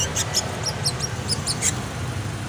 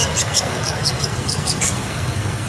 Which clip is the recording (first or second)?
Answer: first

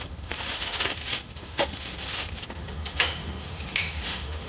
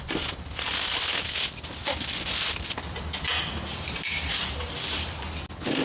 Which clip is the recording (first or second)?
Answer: second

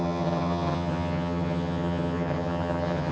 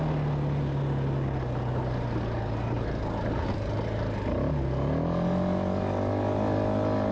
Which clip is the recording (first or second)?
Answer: second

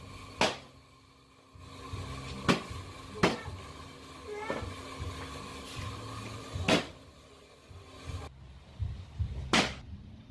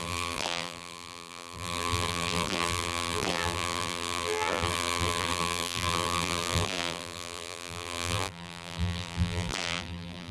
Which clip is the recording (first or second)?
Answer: first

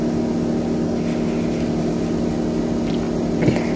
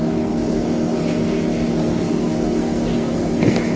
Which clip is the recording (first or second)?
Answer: first